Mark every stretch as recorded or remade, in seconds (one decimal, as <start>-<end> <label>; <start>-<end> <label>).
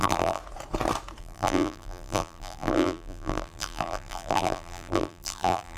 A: 0.0-0.4 remade; 0.4-1.2 recorded; 1.2-5.8 remade